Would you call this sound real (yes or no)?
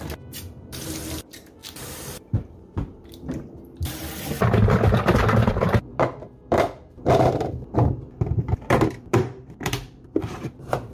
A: no